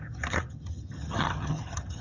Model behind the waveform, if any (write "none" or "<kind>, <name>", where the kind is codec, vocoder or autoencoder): vocoder, HiFi-GAN